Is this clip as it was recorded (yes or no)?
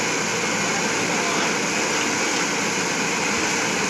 yes